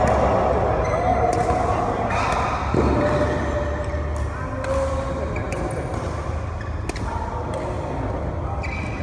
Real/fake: real